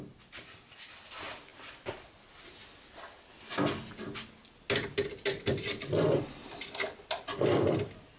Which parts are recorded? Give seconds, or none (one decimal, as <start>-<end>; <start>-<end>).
0.0-8.2